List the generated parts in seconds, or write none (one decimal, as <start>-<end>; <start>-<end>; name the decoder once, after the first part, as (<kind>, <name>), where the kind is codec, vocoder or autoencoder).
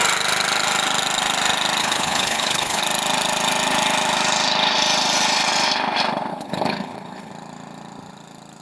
1.8-2.8 (codec, HILCodec); 6.3-7.3